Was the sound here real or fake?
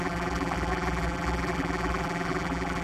fake